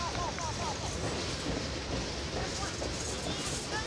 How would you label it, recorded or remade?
recorded